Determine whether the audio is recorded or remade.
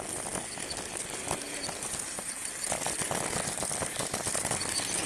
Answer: recorded